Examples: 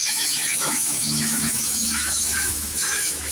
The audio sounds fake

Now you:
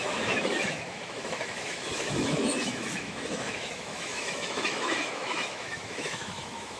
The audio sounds fake